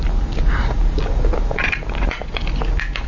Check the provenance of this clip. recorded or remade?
recorded